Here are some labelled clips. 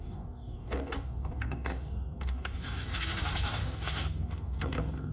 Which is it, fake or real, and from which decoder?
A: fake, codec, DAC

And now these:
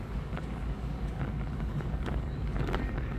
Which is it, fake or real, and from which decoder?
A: fake, codec, DAC